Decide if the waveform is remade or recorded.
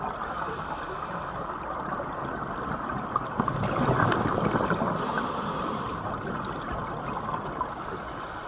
recorded